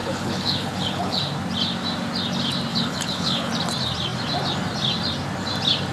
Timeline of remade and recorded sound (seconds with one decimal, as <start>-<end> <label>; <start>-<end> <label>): 0.0-1.2 remade; 1.2-2.7 recorded; 2.7-3.5 remade; 3.5-5.9 recorded

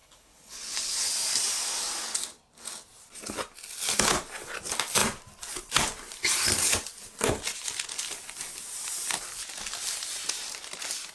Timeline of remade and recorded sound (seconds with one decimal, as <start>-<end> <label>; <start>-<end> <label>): 0.0-1.1 remade; 1.1-11.1 recorded

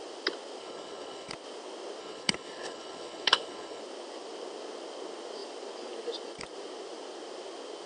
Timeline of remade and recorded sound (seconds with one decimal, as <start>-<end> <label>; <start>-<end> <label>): 0.0-0.6 recorded; 0.6-1.3 remade; 1.3-2.0 recorded; 2.0-3.8 remade; 3.8-7.9 recorded

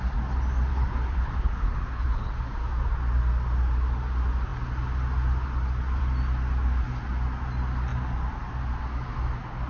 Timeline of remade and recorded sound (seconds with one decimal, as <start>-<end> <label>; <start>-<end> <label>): 0.0-0.7 recorded; 0.7-2.3 remade; 2.3-9.7 recorded

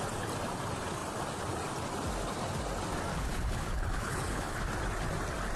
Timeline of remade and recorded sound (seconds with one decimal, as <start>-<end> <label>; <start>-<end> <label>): 0.0-3.1 recorded; 3.1-4.6 remade; 4.6-5.6 recorded

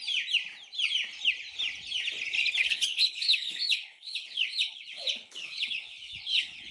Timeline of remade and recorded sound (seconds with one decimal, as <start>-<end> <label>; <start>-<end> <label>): 0.0-2.6 recorded; 2.6-6.7 remade

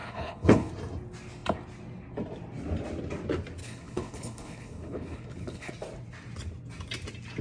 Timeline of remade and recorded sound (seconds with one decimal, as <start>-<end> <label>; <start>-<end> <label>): 0.0-0.7 remade; 0.7-3.6 recorded; 3.6-5.7 remade; 5.7-7.4 recorded